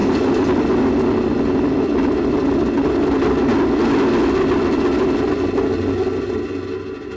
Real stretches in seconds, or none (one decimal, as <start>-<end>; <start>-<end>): 2.9-7.2